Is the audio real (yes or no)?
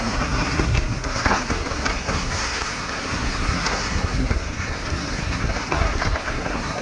no